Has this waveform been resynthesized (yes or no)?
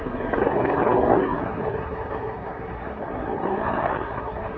yes